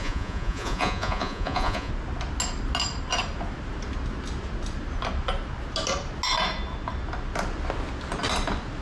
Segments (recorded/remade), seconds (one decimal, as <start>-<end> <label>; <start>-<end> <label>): 0.0-1.9 remade; 1.9-8.8 recorded